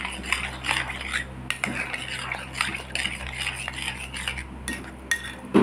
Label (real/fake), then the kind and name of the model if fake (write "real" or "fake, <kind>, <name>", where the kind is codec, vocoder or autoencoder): real